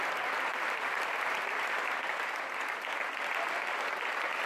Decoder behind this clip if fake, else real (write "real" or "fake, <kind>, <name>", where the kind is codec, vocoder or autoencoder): real